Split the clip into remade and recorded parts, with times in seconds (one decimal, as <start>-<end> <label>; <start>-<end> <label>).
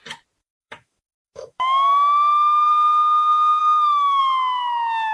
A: 0.0-0.4 recorded; 0.4-2.7 remade; 2.7-3.6 recorded; 3.6-4.2 remade; 4.2-5.1 recorded